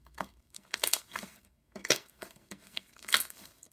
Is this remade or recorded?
remade